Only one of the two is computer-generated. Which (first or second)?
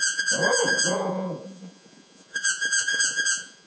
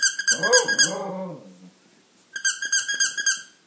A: first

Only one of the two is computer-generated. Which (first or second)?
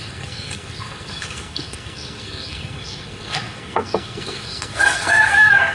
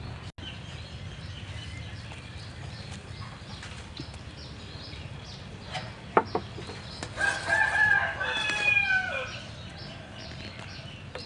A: first